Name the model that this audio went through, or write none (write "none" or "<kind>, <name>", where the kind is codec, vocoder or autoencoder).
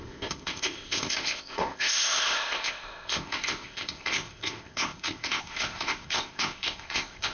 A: codec, ZipCodec